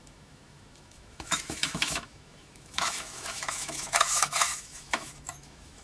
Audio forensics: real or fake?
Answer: fake